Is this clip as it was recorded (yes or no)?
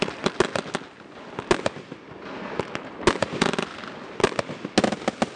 yes